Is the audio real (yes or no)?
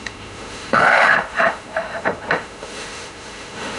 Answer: no